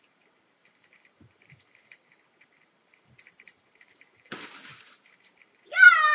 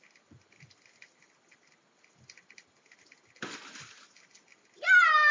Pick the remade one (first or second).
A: first